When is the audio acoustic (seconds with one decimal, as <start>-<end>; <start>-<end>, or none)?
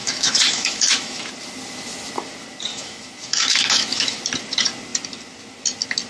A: 1.3-2.7; 4.2-6.1